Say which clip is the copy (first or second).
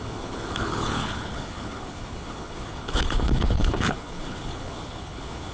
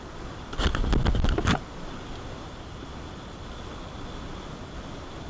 first